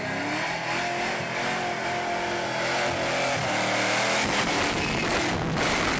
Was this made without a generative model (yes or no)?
yes